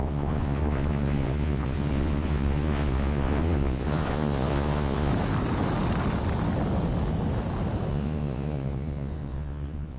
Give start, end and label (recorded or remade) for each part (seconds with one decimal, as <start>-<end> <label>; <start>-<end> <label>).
0.0-5.1 remade; 5.1-7.9 recorded; 7.9-10.0 remade